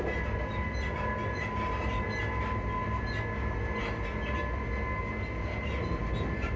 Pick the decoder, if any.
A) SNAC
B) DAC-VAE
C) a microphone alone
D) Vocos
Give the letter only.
C